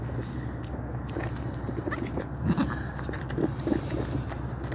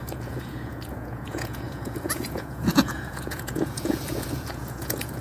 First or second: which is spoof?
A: second